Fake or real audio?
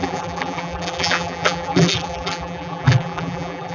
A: fake